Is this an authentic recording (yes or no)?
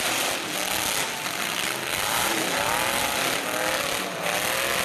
yes